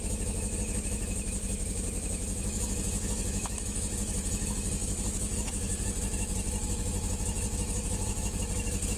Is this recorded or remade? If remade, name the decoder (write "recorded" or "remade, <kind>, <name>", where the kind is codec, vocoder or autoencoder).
remade, autoencoder, DAC-VAE